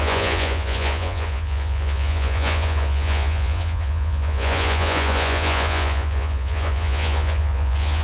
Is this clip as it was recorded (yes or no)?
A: no